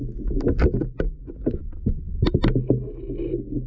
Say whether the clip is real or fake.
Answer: real